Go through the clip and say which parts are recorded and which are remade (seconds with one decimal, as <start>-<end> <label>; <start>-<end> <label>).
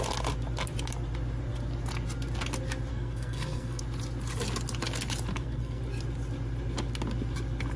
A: 0.0-2.9 recorded; 2.9-3.8 remade; 3.8-5.3 recorded; 5.3-5.8 remade; 5.8-7.8 recorded